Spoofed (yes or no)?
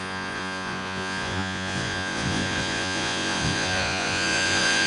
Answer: yes